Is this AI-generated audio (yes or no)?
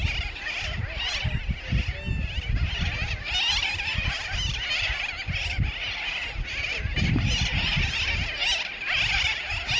no